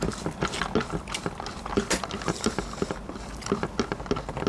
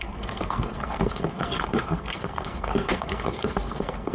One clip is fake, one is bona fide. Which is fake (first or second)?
second